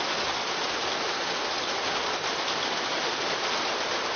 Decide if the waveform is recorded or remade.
recorded